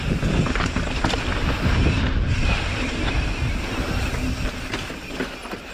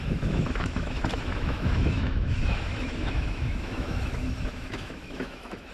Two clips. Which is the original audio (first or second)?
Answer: first